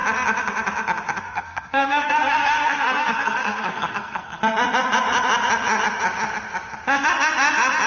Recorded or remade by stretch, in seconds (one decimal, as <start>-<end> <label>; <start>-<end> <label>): 0.0-1.2 recorded; 1.2-4.4 remade; 4.4-7.9 recorded